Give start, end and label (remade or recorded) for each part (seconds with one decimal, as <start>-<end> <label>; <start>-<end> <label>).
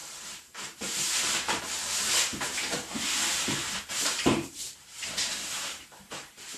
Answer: 0.0-1.6 remade; 1.6-2.3 recorded; 2.3-6.6 remade